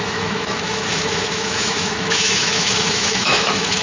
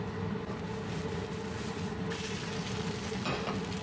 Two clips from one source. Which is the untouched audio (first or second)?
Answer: second